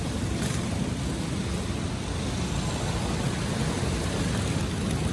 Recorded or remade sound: recorded